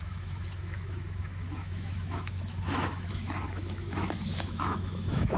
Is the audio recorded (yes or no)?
no